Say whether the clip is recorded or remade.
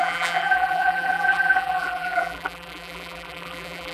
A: remade